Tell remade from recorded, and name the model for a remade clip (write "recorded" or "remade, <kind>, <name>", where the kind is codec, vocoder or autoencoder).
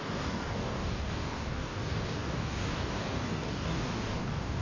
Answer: remade, codec, DAC